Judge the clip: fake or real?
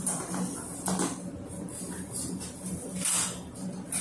real